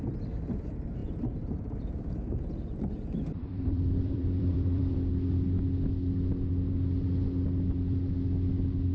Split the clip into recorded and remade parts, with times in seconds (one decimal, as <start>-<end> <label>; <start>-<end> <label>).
0.0-1.0 recorded; 1.0-5.1 remade; 5.1-8.9 recorded